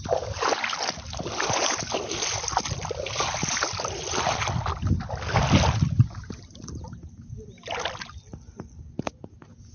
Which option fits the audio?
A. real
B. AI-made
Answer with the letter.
A